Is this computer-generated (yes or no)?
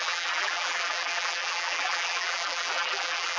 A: yes